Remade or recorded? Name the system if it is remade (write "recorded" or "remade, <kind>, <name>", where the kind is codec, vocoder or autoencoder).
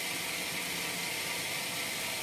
recorded